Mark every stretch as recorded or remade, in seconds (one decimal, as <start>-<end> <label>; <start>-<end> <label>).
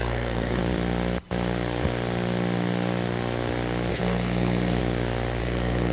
0.0-0.6 remade; 0.6-3.9 recorded; 3.9-4.8 remade; 4.8-5.4 recorded; 5.4-5.9 remade